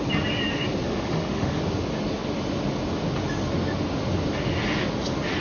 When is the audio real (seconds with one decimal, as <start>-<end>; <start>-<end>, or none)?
0.0-0.9; 1.6-5.4